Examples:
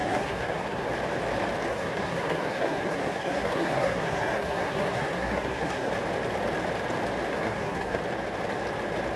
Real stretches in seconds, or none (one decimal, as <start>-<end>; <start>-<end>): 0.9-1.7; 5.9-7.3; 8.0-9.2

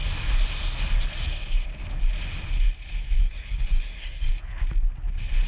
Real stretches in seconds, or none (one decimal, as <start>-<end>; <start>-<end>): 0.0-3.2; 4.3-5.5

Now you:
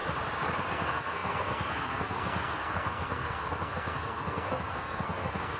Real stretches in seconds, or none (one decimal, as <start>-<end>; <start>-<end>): 0.0-0.6

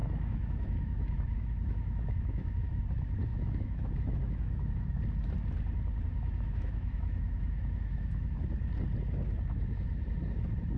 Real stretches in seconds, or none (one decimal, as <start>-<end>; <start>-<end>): 2.8-3.3; 5.0-6.1; 8.4-10.8

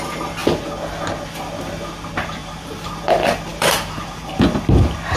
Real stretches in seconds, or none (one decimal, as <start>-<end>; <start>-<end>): 0.0-2.4; 2.9-3.5; 4.3-5.2